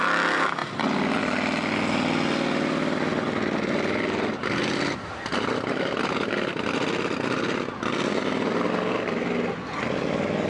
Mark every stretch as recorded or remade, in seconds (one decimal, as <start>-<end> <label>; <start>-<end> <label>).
0.0-10.5 recorded